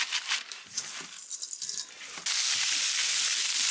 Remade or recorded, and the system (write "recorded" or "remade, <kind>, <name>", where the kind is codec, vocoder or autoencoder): recorded